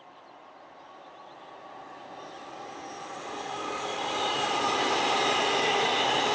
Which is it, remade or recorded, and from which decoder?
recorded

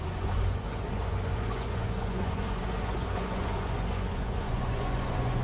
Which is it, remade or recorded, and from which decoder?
remade, vocoder, Vocos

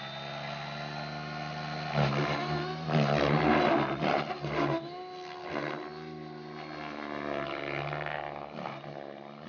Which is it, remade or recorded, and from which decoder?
recorded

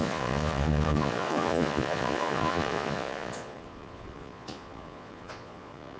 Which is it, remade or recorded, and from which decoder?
remade, vocoder, Vocos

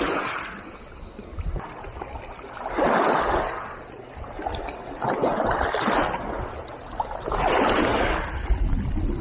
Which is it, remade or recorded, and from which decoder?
recorded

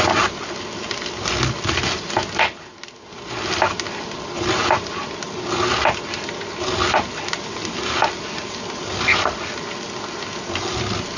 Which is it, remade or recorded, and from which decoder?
recorded